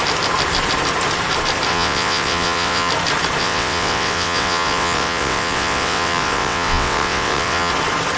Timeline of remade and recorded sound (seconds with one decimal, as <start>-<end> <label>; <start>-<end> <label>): 0.0-1.7 recorded; 1.7-2.9 remade; 2.9-3.4 recorded; 3.4-7.7 remade; 7.7-8.2 recorded